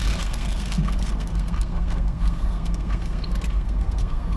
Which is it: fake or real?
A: fake